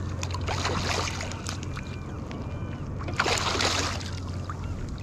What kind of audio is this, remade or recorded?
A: recorded